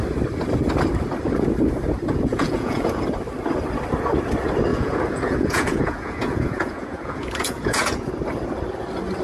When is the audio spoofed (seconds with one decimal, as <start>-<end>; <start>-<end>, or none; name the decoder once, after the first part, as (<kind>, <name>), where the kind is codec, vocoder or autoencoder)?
2.3-3.0 (vocoder, Vocos); 4.7-8.1